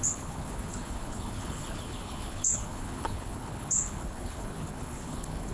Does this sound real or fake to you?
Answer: fake